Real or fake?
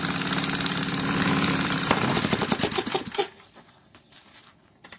real